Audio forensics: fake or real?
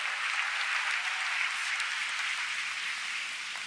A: real